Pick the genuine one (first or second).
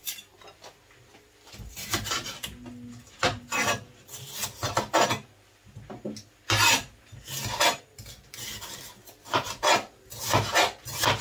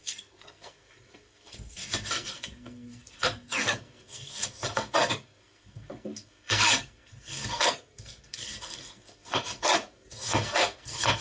first